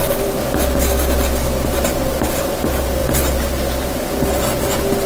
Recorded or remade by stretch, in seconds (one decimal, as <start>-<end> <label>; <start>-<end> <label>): 0.0-5.1 recorded